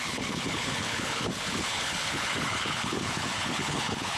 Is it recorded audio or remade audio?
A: remade